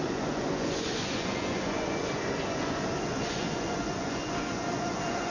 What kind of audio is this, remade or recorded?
remade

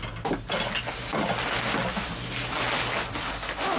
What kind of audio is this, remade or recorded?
recorded